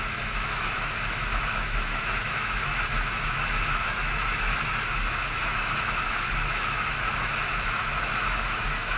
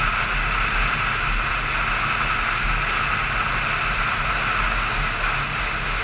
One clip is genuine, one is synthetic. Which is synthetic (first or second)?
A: first